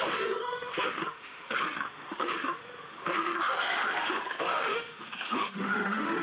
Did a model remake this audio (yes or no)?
yes